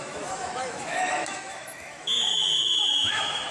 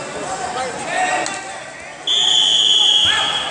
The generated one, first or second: first